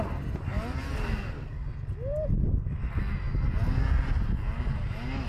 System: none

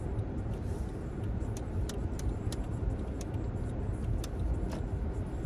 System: none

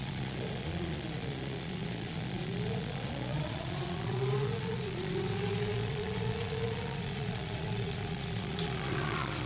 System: vocoder, Vocos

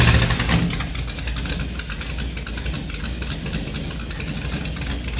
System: none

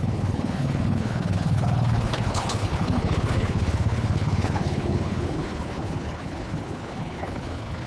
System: codec, HILCodec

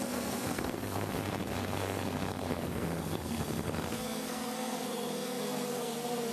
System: codec, SNAC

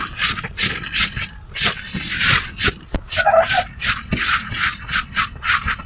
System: none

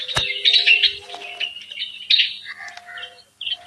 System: none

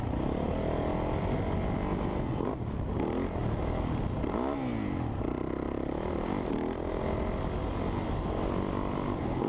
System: none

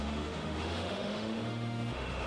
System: autoencoder, DAC-VAE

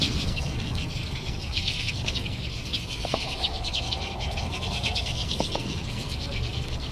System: codec, SNAC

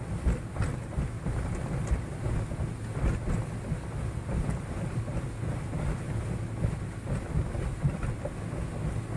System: none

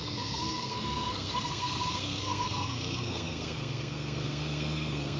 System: codec, SNAC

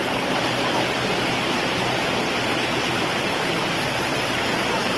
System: none